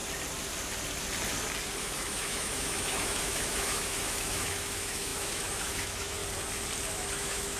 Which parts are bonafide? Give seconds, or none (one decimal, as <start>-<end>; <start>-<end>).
0.0-1.8; 6.2-6.9

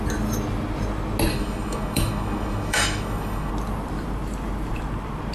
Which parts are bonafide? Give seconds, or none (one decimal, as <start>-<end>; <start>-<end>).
0.0-1.3; 3.5-5.3

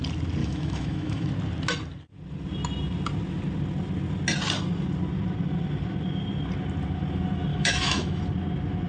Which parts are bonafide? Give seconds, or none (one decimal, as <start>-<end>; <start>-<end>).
0.0-0.4; 1.3-7.5; 8.2-8.9

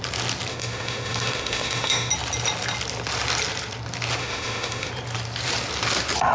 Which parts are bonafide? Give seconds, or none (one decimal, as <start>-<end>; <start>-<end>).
0.0-0.5; 2.1-4.2; 4.9-6.3

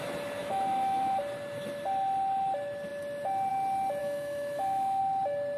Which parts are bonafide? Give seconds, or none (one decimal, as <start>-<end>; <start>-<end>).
0.0-0.4; 1.2-4.0; 5.0-5.6

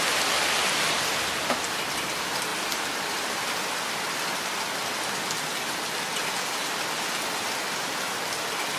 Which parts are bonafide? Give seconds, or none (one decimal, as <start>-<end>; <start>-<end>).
0.0-8.8

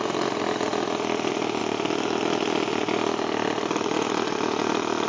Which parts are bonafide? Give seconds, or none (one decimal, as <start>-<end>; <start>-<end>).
0.0-5.1